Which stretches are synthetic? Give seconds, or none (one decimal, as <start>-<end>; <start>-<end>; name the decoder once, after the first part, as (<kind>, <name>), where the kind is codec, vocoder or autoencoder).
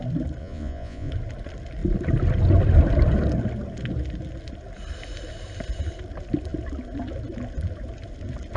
0.4-1.1 (vocoder, Vocos)